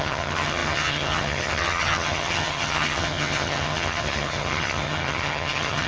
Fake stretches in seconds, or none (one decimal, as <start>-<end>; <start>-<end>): 0.0-5.9